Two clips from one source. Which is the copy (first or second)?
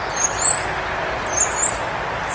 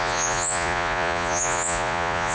second